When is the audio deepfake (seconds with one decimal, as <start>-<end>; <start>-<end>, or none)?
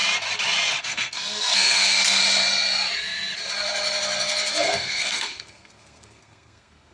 0.8-2.2; 4.5-6.9